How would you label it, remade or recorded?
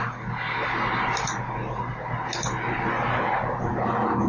recorded